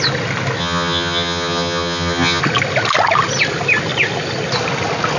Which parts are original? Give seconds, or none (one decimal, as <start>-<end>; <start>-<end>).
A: 0.0-0.6; 2.4-5.2